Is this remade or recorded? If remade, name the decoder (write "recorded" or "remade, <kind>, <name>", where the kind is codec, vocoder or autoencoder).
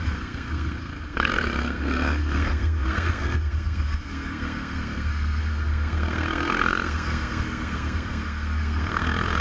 remade, codec, SNAC